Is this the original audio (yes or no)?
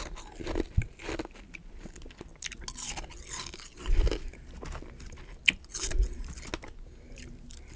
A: yes